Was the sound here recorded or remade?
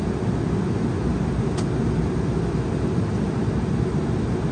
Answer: recorded